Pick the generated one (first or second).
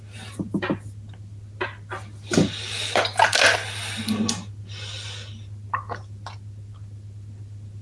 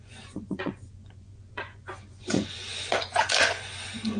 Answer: second